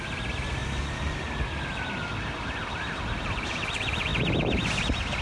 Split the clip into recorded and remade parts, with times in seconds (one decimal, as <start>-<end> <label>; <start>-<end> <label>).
0.0-5.2 recorded